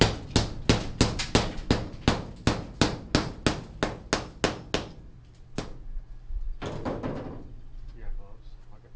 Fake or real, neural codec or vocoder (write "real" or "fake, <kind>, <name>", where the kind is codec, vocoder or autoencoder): real